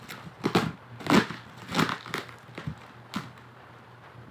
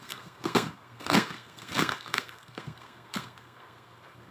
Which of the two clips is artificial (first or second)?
second